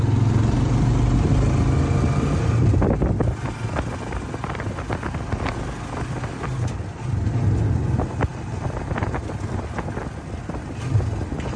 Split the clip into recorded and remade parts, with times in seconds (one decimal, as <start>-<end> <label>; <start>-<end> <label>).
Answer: 0.0-11.6 recorded